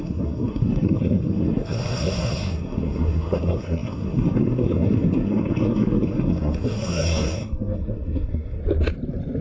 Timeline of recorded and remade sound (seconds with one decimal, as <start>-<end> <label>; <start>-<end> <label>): 0.0-8.6 remade; 8.6-9.4 recorded